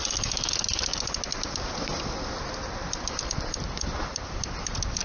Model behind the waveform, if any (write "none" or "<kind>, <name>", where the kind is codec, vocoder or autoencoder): none